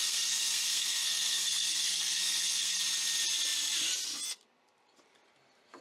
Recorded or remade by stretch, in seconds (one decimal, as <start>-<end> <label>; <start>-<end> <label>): 0.0-2.8 remade; 2.8-5.8 recorded